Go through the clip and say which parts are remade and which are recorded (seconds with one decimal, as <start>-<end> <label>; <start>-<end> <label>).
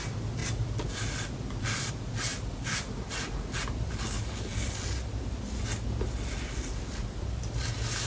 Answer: 0.0-8.1 recorded